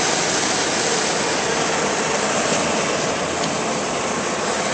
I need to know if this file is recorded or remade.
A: recorded